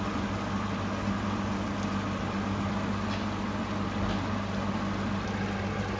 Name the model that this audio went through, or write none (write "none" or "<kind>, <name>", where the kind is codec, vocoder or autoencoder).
none